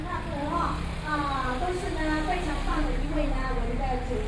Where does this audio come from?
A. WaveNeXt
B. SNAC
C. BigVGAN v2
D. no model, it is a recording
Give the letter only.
D